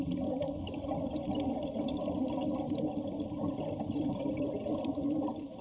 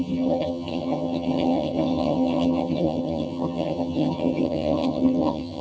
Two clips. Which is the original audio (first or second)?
first